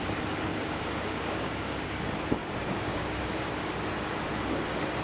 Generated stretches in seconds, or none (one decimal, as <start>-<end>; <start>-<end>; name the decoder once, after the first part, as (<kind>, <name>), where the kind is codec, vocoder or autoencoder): 0.5-2.0 (codec, DAC); 2.4-3.2